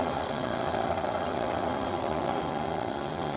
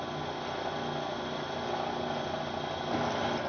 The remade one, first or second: first